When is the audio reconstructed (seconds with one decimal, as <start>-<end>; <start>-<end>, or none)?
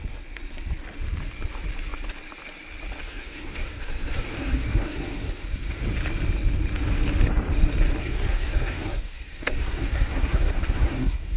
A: 3.0-5.8; 8.0-11.4